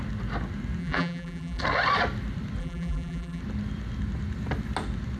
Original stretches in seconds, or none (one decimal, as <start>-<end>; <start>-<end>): 0.0-0.8; 1.6-2.6; 3.4-5.2